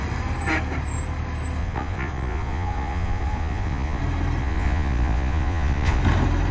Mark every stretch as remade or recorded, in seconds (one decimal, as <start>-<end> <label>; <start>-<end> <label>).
0.0-1.6 recorded; 1.6-4.0 remade; 4.0-4.4 recorded; 4.4-6.0 remade; 6.0-6.5 recorded